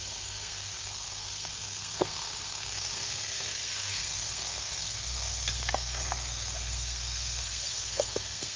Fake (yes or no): yes